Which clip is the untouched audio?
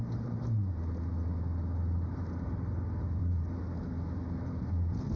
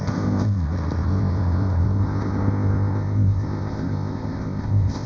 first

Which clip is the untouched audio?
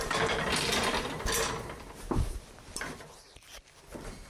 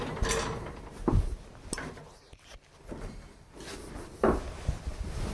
second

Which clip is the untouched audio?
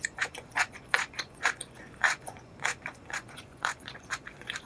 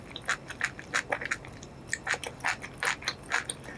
second